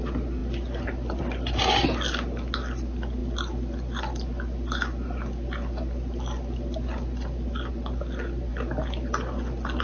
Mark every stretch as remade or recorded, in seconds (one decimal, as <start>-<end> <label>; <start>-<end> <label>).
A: 0.0-9.8 recorded